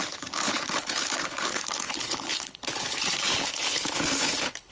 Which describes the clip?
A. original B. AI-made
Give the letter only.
B